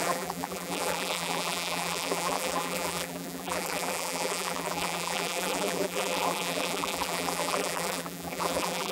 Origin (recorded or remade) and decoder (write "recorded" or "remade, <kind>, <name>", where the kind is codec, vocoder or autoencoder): remade, vocoder, BigVGAN v2